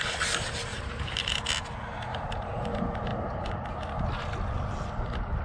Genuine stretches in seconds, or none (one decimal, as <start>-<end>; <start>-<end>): 0.0-0.7; 1.3-2.1; 2.7-3.1; 3.7-5.4